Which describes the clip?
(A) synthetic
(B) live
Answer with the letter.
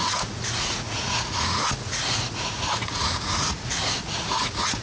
A